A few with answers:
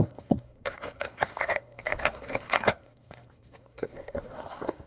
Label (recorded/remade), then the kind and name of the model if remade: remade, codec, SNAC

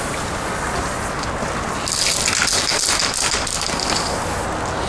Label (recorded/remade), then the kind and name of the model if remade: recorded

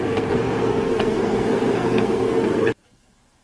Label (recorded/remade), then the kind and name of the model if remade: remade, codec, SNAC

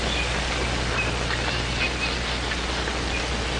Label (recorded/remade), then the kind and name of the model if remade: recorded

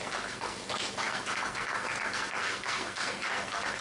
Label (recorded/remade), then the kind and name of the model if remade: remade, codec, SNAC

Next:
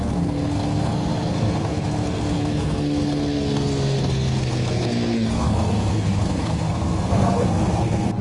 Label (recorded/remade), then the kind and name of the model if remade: remade, codec, SNAC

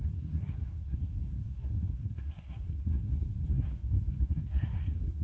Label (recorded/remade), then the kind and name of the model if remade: remade, codec, SNAC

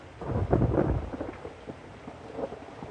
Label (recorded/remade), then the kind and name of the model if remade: recorded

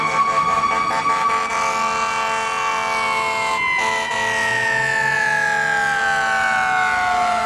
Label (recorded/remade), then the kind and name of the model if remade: recorded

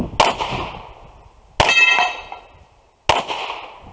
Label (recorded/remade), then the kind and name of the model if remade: recorded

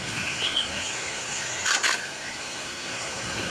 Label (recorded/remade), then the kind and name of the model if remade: remade, codec, SNAC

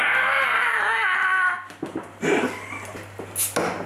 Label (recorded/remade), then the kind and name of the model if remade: recorded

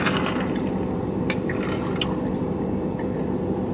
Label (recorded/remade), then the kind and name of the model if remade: recorded